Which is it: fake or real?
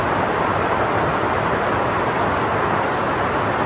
real